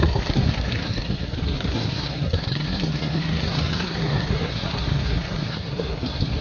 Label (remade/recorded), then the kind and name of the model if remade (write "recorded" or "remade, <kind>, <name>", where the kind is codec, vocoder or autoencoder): remade, codec, SNAC